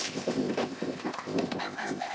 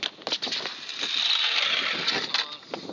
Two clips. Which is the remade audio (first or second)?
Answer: first